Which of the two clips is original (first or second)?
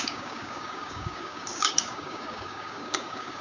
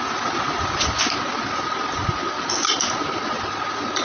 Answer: second